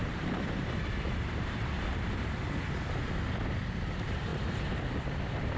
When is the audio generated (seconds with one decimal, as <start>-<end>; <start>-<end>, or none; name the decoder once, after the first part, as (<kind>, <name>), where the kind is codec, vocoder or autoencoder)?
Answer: 0.0-2.4 (vocoder, BigVGAN v2); 4.3-5.6